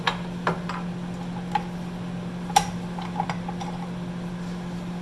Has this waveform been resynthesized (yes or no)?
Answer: no